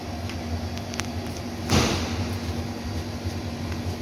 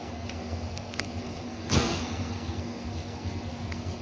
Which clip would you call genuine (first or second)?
first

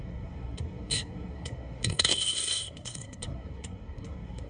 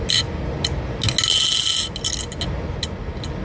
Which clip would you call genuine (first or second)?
second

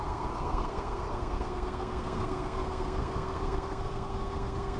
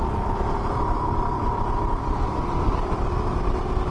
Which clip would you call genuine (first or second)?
second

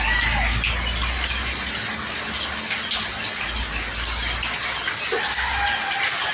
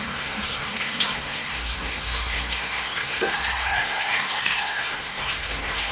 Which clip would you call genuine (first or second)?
first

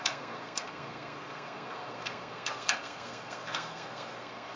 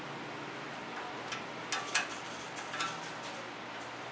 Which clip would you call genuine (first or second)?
second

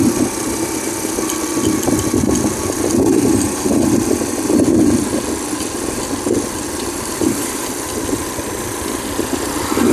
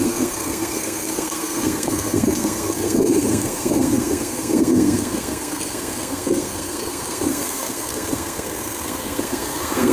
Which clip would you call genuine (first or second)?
first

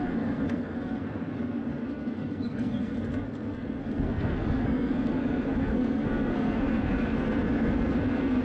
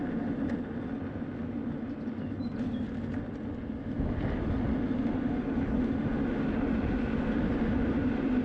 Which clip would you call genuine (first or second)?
second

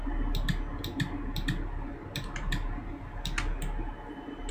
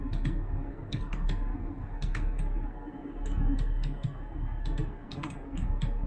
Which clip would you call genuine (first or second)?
first